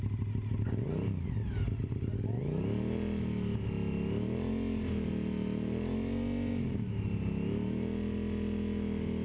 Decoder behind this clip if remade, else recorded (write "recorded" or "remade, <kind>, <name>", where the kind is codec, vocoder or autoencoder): recorded